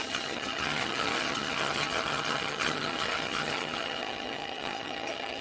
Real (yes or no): no